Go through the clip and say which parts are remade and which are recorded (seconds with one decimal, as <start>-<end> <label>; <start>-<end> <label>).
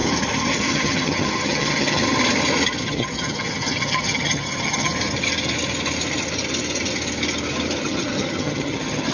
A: 0.0-0.5 recorded; 0.5-2.0 remade; 2.0-2.8 recorded; 2.8-4.9 remade; 4.9-7.8 recorded; 7.8-9.1 remade